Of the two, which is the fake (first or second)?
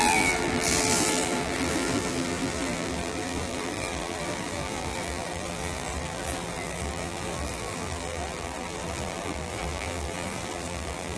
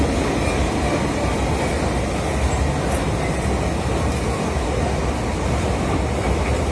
first